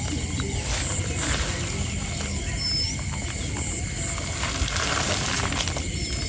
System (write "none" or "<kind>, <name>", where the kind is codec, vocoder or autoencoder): none